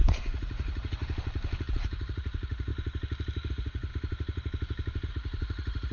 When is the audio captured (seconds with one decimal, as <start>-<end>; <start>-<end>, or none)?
1.0-1.7; 2.7-3.5; 3.9-5.1